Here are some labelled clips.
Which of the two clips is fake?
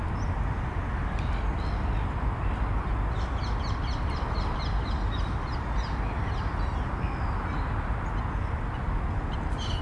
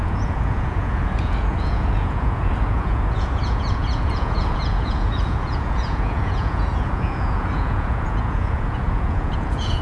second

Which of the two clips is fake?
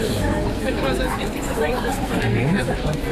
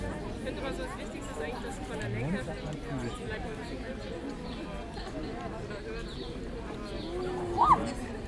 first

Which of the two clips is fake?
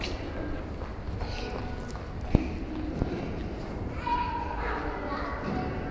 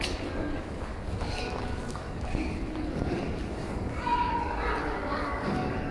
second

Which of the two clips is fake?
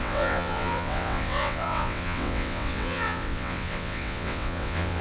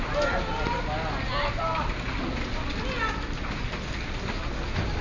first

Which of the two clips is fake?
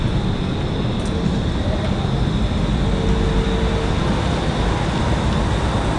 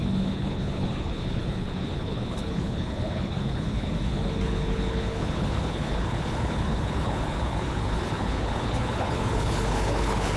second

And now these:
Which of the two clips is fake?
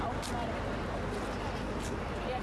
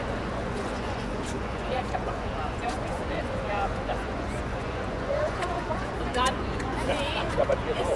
second